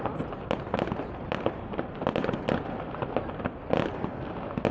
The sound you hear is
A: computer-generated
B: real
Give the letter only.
B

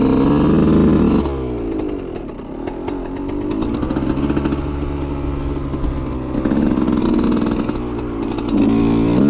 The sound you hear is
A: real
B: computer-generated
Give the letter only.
A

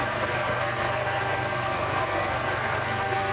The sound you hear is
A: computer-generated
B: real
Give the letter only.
A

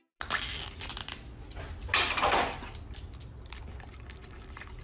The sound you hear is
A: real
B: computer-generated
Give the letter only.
A